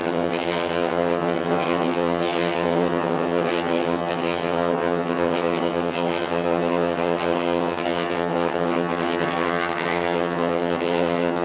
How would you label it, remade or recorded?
remade